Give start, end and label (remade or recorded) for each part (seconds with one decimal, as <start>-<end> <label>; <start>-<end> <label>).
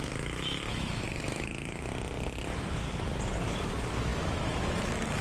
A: 0.0-1.9 remade; 1.9-3.6 recorded; 3.6-5.2 remade